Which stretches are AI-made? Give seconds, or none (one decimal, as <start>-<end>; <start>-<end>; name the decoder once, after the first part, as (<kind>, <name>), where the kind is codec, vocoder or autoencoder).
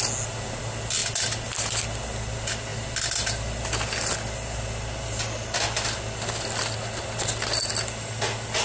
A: none